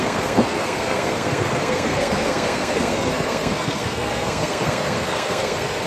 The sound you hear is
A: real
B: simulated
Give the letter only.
B